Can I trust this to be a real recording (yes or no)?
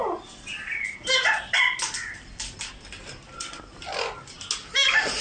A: yes